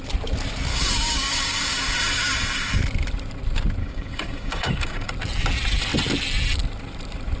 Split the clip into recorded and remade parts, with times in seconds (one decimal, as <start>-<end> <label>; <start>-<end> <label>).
0.0-0.7 recorded; 0.7-2.8 remade; 2.8-3.8 recorded; 3.8-5.1 remade; 5.1-7.4 recorded